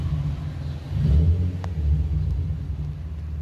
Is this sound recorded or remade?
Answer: recorded